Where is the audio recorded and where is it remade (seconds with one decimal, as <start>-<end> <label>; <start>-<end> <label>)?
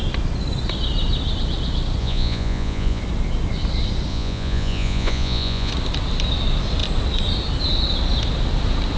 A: 0.0-2.0 recorded; 2.0-3.0 remade; 3.0-4.1 recorded; 4.1-5.7 remade; 5.7-9.0 recorded